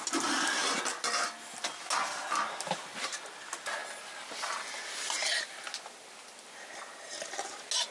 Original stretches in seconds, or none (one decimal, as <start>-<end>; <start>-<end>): 0.0-7.9